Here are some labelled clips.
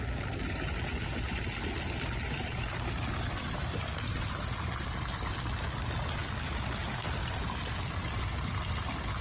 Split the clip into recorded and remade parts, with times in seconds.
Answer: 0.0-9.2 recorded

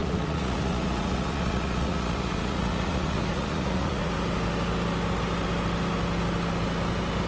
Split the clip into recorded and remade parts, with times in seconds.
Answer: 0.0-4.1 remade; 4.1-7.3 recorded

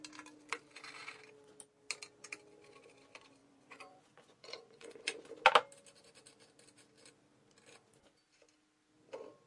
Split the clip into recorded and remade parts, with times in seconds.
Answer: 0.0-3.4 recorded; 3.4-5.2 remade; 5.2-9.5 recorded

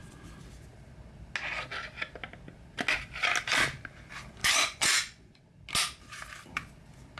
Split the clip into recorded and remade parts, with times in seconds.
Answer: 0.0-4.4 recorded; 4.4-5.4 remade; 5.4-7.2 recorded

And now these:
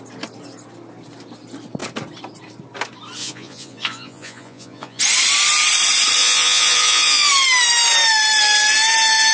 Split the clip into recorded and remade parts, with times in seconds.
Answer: 0.0-3.2 recorded; 3.2-5.0 remade; 5.0-6.2 recorded; 6.2-7.3 remade; 7.3-9.3 recorded

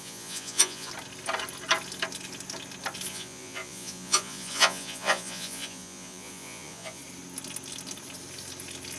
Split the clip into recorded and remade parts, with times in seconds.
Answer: 0.0-0.9 remade; 0.9-3.1 recorded; 3.1-7.0 remade; 7.0-9.0 recorded

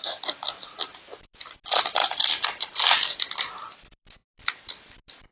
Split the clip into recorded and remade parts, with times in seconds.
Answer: 0.0-5.3 recorded